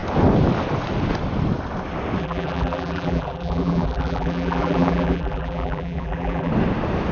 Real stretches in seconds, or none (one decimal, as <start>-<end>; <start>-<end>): 0.0-2.2; 6.5-7.1